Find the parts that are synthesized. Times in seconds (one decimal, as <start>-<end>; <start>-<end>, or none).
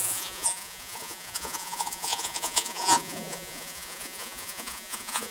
0.0-5.3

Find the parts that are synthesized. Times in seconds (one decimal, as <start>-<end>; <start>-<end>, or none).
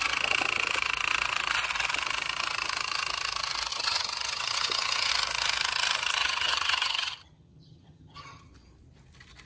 3.7-5.1; 6.2-8.5